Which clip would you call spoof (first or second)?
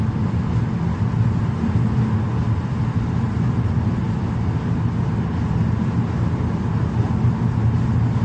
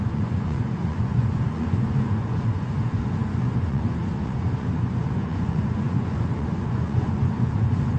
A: second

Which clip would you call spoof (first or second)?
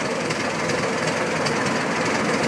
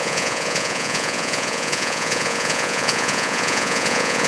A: second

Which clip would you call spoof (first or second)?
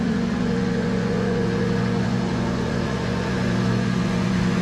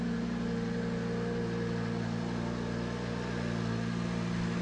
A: first